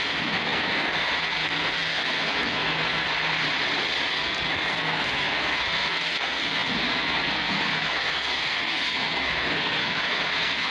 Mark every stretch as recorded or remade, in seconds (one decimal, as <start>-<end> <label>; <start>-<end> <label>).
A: 0.0-3.1 remade; 3.1-4.1 recorded; 4.1-10.7 remade